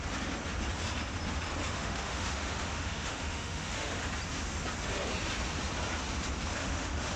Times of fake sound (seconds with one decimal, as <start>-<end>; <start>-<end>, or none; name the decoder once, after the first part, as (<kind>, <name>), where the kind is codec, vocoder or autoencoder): 1.6-3.9 (autoencoder, DAC-VAE); 6.6-7.2